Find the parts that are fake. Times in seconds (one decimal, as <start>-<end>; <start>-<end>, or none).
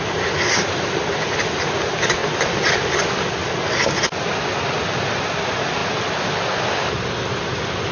none